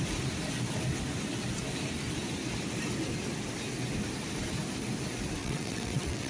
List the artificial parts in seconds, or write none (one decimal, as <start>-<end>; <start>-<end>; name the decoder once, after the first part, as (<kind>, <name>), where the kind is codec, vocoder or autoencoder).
5.4-6.3 (vocoder, WaveNeXt)